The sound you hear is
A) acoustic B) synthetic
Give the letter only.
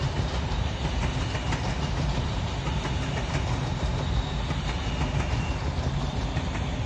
A